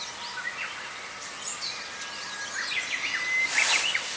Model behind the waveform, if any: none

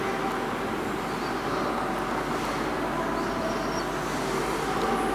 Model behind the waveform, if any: none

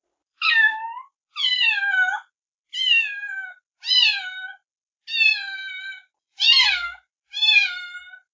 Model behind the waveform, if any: none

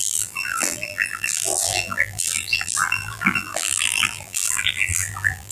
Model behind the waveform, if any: vocoder, BigVGAN v2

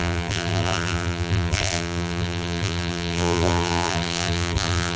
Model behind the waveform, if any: vocoder, BigVGAN v2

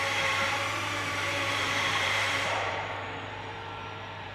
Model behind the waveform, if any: vocoder, BigVGAN v2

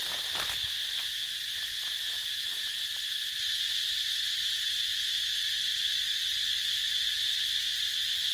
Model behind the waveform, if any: none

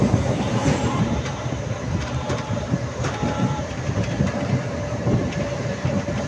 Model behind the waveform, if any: vocoder, BigVGAN v2